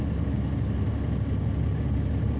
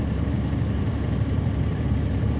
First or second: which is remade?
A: second